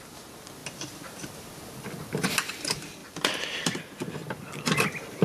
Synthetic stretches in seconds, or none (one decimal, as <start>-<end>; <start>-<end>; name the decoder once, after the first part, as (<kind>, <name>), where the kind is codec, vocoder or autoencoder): 0.6-1.6 (vocoder, BigVGAN v2); 3.0-3.8; 4.2-5.2